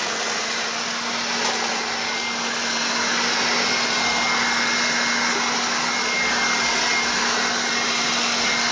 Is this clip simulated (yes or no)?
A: no